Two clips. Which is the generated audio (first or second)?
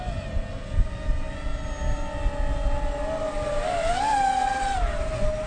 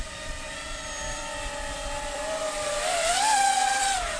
second